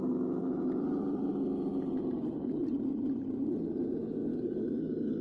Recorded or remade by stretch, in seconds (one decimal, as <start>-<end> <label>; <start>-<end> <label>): 0.0-4.3 recorded; 4.3-5.2 remade